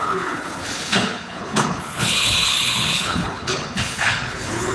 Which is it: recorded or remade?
remade